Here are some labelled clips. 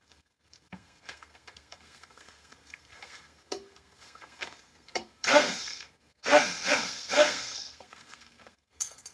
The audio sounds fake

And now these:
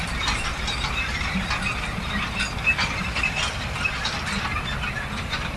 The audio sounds real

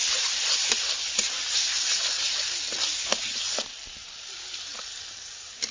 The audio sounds real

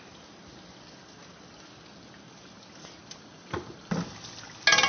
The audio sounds real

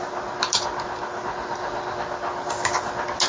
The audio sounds real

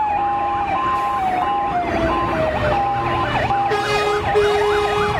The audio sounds real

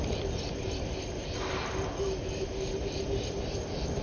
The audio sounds real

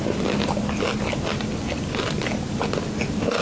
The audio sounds real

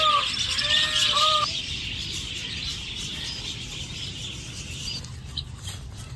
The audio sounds real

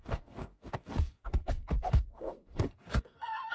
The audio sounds fake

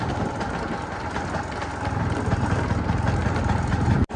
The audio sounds real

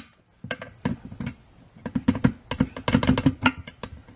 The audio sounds real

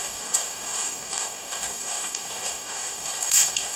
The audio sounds fake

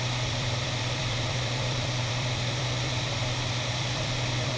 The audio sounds fake